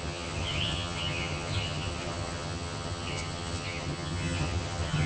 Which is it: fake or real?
fake